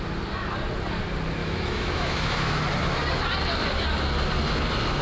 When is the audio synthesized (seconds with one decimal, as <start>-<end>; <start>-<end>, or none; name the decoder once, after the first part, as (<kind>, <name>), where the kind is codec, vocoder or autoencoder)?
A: 1.4-2.6 (autoencoder, DAC-VAE)